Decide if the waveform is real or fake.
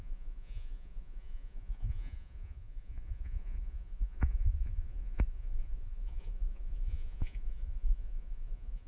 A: fake